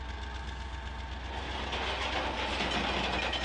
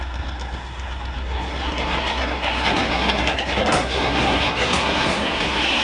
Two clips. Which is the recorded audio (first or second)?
first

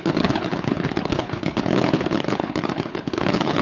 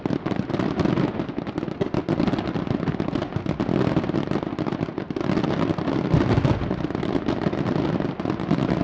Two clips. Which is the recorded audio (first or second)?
second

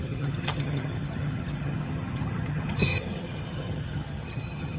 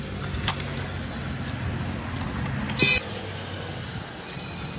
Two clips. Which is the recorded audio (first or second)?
second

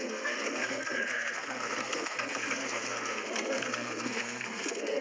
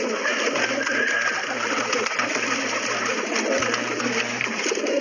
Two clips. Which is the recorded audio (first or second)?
second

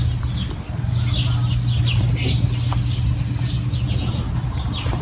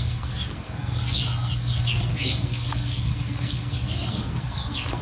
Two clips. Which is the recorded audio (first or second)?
first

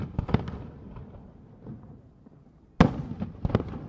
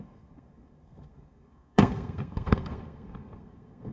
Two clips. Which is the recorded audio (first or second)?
first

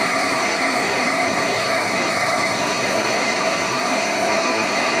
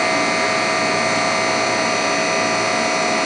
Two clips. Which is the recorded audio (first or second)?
second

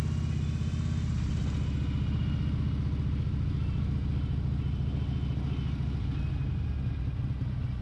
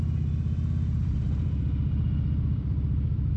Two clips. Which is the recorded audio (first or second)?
first